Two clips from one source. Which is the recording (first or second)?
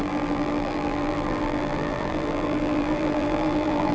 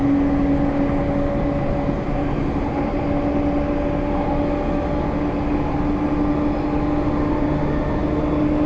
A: second